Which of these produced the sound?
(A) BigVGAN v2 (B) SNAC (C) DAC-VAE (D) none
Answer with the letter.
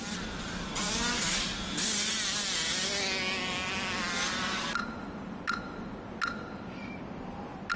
D